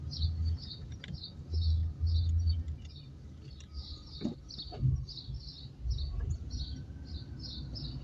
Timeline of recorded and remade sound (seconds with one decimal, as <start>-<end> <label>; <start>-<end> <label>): 0.0-8.0 recorded